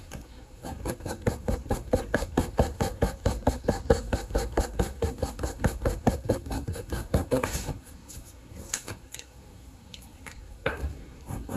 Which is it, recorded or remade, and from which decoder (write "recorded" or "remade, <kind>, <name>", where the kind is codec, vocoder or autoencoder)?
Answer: remade, codec, SNAC